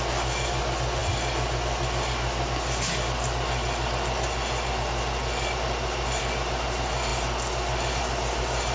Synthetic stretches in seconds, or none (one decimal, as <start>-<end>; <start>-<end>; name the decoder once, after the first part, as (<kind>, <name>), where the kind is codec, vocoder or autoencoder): none